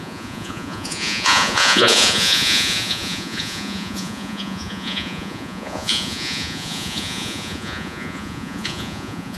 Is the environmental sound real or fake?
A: fake